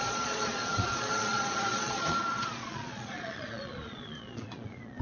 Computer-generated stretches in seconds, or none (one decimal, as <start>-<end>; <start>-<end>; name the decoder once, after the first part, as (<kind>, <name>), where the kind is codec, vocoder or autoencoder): 0.0-5.0 (vocoder, Vocos)